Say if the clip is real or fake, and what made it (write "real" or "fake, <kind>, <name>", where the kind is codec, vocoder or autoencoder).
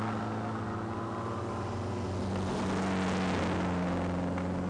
real